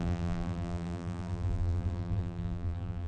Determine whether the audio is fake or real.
fake